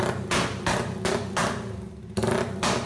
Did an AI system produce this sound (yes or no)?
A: no